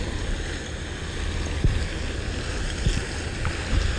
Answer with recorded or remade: recorded